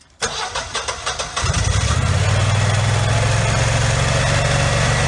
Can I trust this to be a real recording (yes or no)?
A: yes